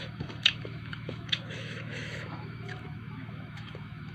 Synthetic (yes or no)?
yes